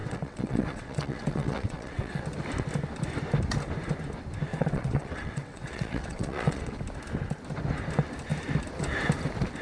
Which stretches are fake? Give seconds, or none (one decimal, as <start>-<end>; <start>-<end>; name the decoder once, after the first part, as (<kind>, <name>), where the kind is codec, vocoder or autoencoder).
0.0-2.2 (vocoder, WaveNeXt); 4.5-6.8